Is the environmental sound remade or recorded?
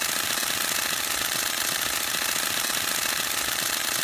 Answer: recorded